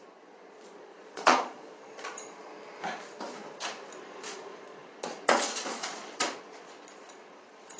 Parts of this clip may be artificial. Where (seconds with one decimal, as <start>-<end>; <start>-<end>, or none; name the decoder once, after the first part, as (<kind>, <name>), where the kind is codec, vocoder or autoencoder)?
0.0-2.5 (vocoder, Vocos); 4.0-7.8